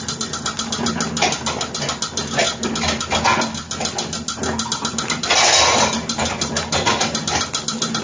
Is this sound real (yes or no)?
yes